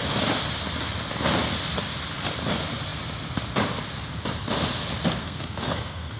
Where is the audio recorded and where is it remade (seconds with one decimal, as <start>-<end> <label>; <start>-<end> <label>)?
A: 0.0-5.2 recorded; 5.2-6.2 remade